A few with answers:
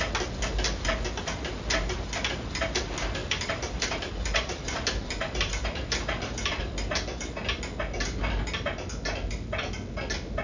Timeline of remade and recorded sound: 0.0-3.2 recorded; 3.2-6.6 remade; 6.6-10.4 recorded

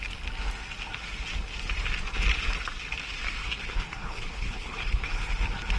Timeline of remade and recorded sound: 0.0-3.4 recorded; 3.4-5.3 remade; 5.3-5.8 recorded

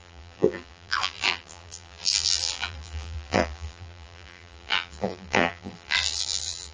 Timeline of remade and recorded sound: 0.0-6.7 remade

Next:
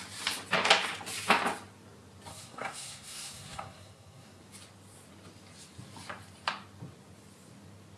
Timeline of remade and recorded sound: 0.0-2.3 recorded; 2.3-4.4 remade; 4.4-8.0 recorded

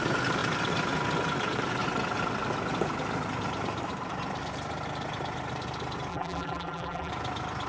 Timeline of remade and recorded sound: 0.0-6.1 recorded; 6.1-7.1 remade; 7.1-7.7 recorded

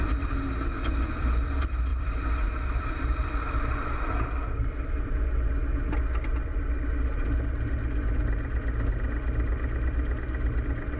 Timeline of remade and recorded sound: 0.0-1.9 recorded; 1.9-5.1 remade; 5.1-6.3 recorded; 6.3-6.9 remade; 6.9-11.0 recorded

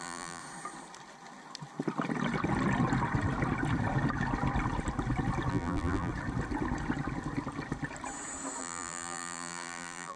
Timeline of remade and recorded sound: 0.0-0.4 remade; 0.4-5.5 recorded; 5.5-6.1 remade; 6.1-8.6 recorded; 8.6-10.2 remade